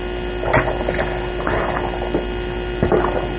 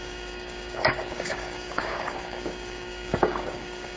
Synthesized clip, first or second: second